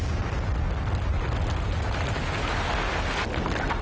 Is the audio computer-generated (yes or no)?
no